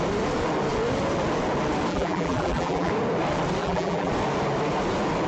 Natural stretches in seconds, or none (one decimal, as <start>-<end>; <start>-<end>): 0.0-1.9; 2.9-3.6; 4.1-5.3